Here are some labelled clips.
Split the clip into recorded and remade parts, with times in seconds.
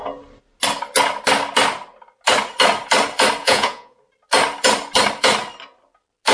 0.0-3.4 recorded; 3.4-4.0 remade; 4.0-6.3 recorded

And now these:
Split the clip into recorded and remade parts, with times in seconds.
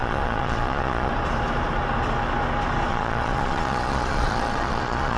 0.0-1.1 remade; 1.1-2.9 recorded; 2.9-5.2 remade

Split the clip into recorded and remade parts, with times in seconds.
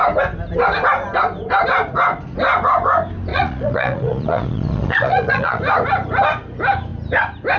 0.0-3.3 recorded; 3.3-5.6 remade; 5.6-7.6 recorded